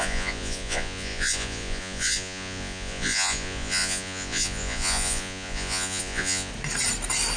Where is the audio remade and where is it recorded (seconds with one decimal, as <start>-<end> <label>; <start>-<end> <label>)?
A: 0.0-6.5 remade; 6.5-7.4 recorded